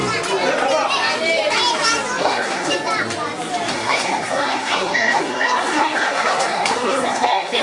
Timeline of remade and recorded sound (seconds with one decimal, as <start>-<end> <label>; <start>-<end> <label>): 0.0-2.2 recorded; 2.2-2.7 remade; 2.7-3.7 recorded; 3.7-7.6 remade